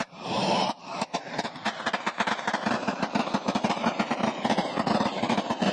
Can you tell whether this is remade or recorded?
remade